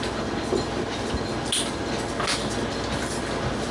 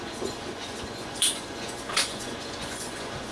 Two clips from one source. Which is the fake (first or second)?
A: second